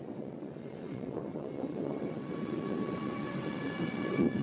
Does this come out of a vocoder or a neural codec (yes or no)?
yes